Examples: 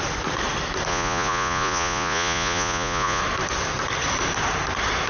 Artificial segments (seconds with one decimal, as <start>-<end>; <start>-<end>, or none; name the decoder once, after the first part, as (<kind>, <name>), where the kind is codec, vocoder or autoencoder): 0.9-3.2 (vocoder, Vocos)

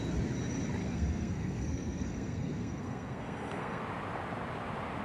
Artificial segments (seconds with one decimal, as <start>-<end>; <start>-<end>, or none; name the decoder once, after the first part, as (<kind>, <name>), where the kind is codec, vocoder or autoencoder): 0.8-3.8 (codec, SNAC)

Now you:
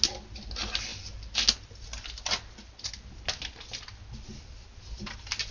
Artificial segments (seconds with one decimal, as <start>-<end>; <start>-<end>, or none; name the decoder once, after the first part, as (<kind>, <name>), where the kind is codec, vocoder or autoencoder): none